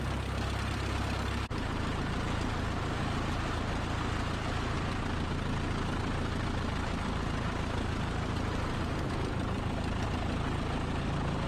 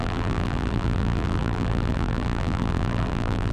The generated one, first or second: second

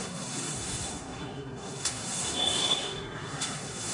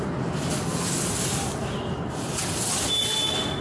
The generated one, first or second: first